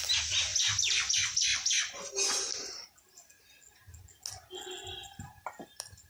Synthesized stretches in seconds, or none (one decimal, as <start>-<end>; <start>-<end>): 5.0-6.1